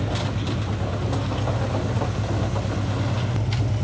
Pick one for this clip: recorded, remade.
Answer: recorded